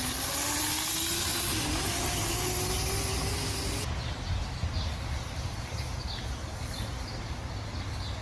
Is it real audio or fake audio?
real